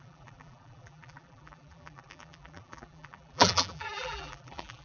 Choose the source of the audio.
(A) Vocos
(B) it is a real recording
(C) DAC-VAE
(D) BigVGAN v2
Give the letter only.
D